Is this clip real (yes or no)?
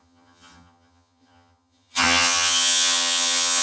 no